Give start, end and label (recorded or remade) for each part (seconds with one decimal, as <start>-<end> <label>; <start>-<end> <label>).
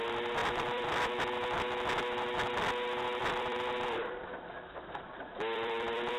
0.0-0.4 recorded; 0.4-1.2 remade; 1.2-3.2 recorded; 3.2-6.2 remade